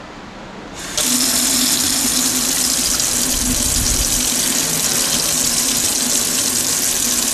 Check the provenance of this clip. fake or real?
real